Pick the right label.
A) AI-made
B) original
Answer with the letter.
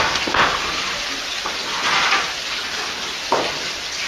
B